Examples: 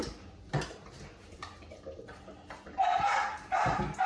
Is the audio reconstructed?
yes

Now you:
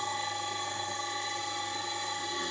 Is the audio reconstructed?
yes